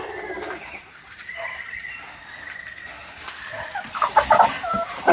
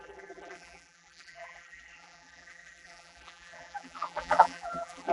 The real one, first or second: first